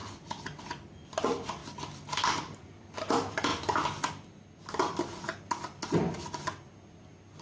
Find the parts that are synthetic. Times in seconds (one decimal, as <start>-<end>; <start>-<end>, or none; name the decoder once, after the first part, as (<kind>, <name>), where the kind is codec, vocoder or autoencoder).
0.0-0.6 (vocoder, BigVGAN v2); 1.6-2.8